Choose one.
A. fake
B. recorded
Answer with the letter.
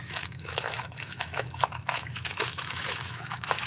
A